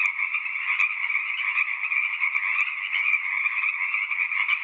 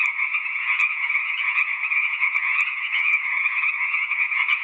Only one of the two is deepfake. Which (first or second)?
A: second